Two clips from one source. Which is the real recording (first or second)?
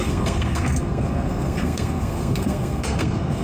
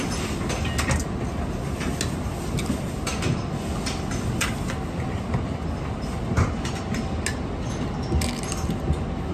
second